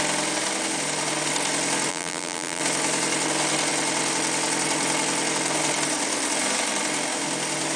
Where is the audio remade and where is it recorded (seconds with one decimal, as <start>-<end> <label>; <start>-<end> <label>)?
0.0-1.9 recorded; 1.9-2.6 remade; 2.6-7.8 recorded